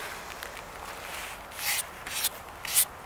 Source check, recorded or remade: recorded